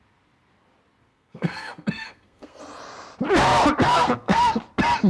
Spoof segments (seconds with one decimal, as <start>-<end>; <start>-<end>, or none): 1.1-2.6; 3.9-4.6